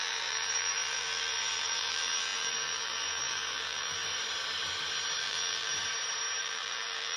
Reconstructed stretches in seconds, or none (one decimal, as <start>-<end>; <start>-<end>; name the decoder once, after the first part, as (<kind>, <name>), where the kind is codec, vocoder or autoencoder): 0.0-4.0 (vocoder, BigVGAN v2); 5.2-5.7; 6.4-7.2